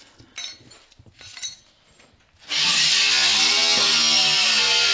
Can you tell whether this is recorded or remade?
recorded